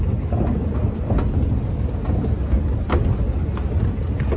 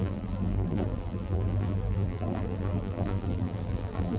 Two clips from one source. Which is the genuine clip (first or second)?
first